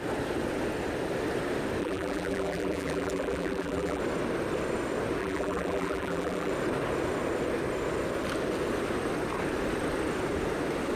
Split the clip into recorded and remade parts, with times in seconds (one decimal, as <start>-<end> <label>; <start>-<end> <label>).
0.0-1.8 recorded; 1.8-4.0 remade; 4.0-5.2 recorded; 5.2-6.5 remade; 6.5-11.0 recorded